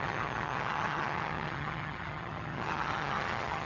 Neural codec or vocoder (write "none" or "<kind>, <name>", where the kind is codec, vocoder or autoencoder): vocoder, HiFi-GAN